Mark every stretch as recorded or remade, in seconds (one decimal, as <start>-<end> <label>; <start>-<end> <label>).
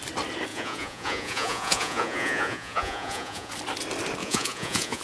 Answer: 0.0-0.5 recorded; 0.5-3.5 remade; 3.5-4.2 recorded; 4.2-5.0 remade